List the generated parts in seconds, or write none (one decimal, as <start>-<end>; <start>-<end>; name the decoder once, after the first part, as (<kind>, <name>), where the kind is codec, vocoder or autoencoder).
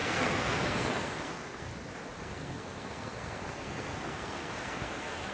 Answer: 0.0-1.7 (codec, SNAC); 2.2-5.3